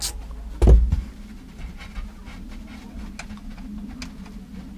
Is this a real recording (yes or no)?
yes